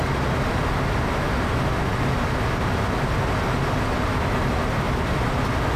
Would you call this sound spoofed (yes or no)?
no